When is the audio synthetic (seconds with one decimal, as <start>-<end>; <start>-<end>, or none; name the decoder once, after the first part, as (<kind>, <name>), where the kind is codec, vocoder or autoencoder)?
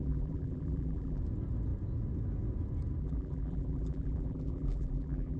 0.0-1.2 (vocoder, BigVGAN v2); 3.0-5.4